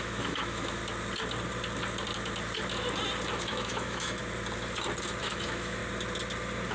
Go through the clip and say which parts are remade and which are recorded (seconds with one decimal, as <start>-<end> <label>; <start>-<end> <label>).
0.0-0.8 remade; 0.8-3.3 recorded; 3.3-4.2 remade; 4.2-5.2 recorded; 5.2-5.8 remade; 5.8-6.7 recorded